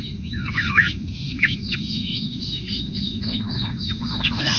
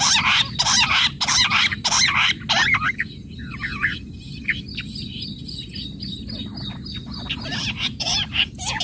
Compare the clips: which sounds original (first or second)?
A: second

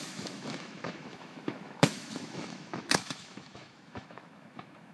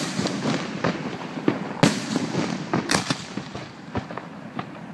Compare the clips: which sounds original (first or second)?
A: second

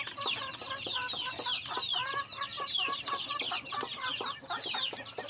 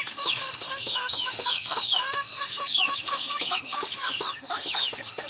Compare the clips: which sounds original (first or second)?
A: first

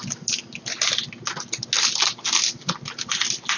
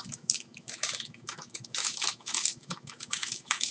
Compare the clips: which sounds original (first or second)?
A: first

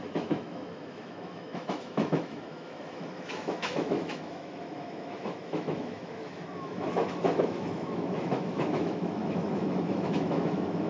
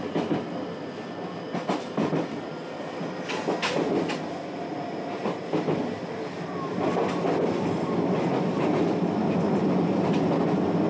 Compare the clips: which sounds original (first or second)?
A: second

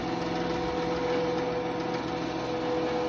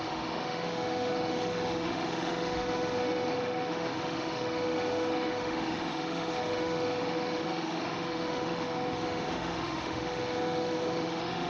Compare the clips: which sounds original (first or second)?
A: first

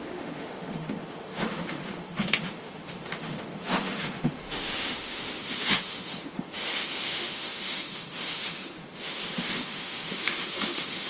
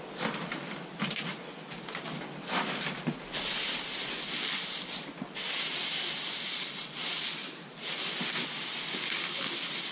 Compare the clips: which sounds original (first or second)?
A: second